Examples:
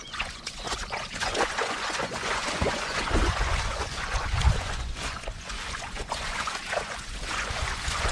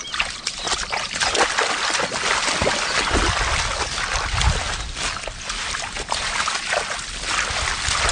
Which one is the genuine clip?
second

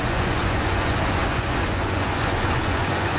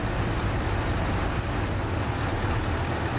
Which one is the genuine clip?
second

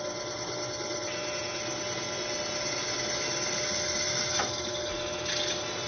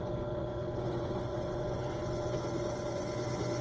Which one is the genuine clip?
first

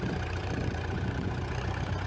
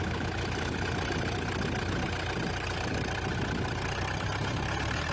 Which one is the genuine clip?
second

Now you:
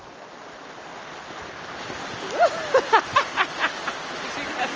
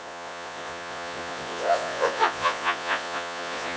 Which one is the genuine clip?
first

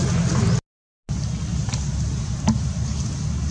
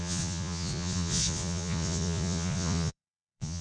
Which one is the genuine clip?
first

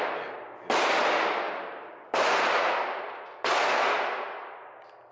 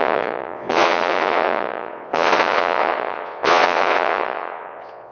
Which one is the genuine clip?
first